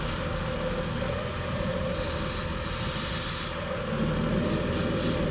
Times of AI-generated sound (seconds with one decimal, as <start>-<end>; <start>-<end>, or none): none